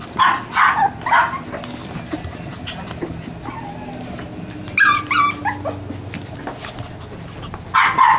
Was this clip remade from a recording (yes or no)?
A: no